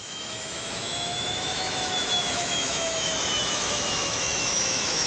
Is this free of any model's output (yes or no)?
no